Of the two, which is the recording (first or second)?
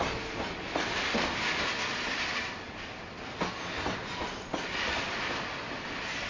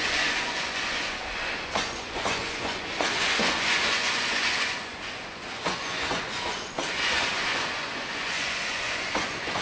first